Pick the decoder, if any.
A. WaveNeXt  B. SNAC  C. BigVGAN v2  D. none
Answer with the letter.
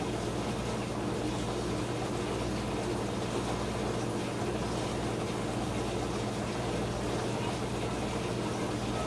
D